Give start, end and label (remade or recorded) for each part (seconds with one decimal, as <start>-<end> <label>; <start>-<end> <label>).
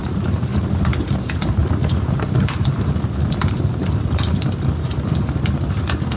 0.0-6.2 remade